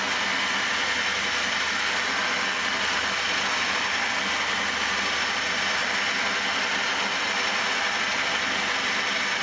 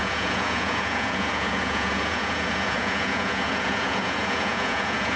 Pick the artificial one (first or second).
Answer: second